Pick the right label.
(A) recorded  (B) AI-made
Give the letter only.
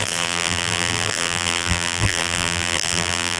B